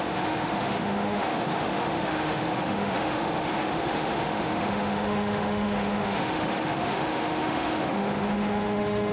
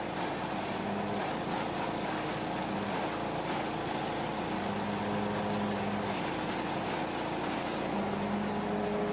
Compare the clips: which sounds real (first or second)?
second